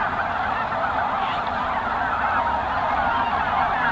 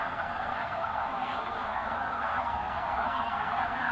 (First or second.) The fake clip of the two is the second